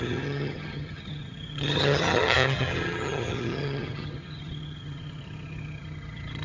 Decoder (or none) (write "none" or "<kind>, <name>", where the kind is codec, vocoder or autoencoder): vocoder, HiFi-GAN